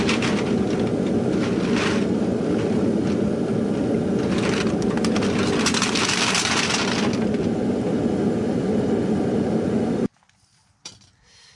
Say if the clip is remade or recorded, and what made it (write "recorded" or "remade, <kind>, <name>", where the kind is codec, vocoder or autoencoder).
recorded